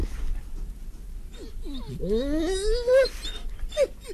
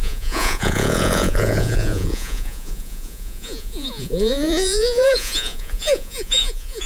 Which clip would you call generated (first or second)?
second